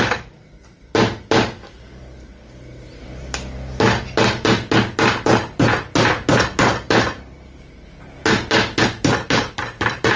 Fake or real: real